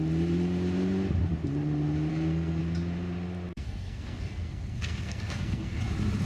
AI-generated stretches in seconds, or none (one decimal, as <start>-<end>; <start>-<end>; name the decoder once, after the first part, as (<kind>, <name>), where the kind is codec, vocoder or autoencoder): 2.1-2.6 (codec, SNAC); 3.5-5.8

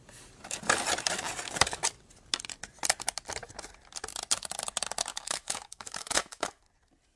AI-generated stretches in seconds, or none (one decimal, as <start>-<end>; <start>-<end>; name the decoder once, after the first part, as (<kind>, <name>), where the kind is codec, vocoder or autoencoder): 5.1-6.6 (autoencoder, DAC-VAE)

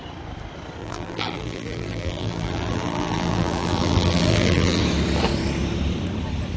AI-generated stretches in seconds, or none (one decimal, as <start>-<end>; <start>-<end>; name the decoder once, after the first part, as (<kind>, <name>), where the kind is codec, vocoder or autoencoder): 0.8-4.8 (vocoder, BigVGAN v2)

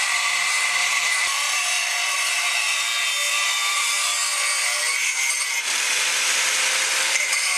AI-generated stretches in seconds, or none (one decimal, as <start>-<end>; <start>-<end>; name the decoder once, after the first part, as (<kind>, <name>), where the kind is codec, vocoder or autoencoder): 0.0-1.8 (vocoder, BigVGAN v2); 3.7-4.2; 7.1-7.6

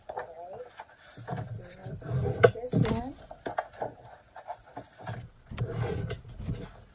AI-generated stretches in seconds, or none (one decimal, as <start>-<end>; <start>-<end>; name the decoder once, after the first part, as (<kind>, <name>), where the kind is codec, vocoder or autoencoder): none